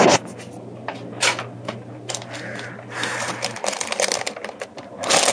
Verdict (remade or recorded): recorded